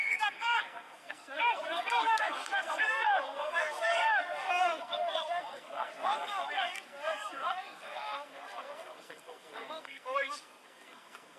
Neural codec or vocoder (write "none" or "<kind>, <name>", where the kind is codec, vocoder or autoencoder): codec, SNAC